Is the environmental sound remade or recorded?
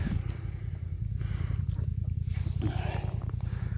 recorded